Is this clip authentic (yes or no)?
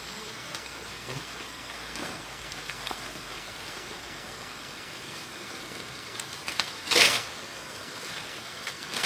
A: no